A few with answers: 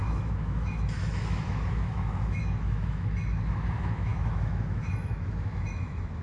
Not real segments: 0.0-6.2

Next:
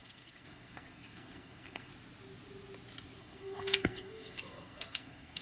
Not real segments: 0.0-1.9; 3.2-5.4